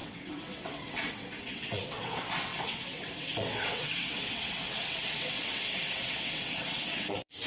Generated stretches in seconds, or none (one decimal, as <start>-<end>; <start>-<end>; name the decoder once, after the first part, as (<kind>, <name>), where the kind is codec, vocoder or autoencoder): 0.0-7.5 (vocoder, WaveNeXt)